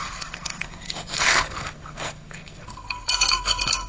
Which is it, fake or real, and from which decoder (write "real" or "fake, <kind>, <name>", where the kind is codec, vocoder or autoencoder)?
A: fake, codec, SNAC